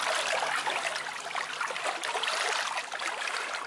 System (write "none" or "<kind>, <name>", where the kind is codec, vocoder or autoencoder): none